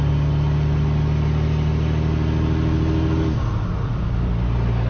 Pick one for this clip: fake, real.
real